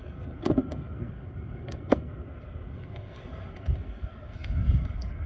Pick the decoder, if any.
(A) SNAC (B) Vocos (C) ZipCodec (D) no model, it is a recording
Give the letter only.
A